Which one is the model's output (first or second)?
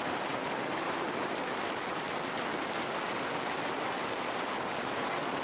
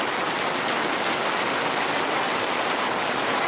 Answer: first